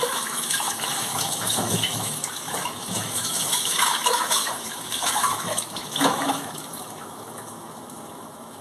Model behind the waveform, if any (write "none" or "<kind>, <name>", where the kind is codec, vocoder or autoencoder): autoencoder, DAC-VAE